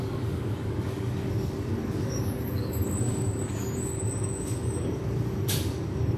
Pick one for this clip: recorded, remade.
remade